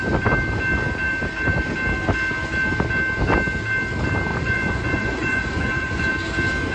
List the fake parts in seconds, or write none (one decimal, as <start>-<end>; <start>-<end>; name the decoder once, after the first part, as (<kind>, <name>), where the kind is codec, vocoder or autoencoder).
4.3-6.1 (vocoder, Vocos)